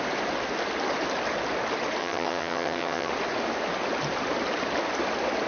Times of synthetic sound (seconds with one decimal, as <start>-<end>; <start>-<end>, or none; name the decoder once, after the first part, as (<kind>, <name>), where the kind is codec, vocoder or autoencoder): 2.0-3.1 (vocoder, HiFi-GAN)